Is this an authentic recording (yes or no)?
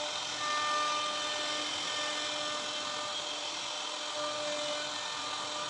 yes